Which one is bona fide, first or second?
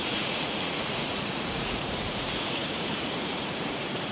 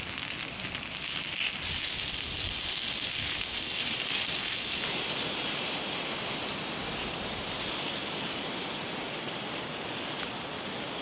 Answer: second